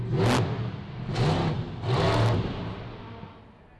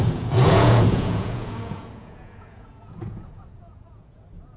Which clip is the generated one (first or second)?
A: second